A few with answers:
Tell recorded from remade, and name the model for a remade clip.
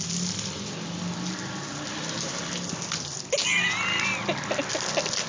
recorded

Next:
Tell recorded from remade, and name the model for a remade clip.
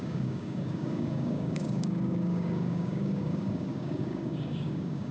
remade, codec, DAC